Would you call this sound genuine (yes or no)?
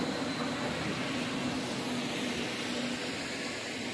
yes